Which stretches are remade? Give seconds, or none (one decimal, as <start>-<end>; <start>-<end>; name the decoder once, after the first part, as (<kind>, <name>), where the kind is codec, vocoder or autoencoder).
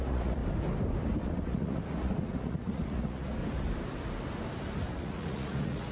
0.0-0.4 (vocoder, Vocos); 1.2-3.4; 4.9-5.9